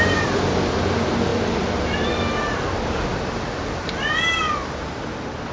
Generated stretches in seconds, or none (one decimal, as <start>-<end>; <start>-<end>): none